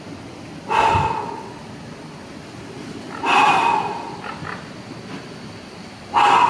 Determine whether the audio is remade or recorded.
recorded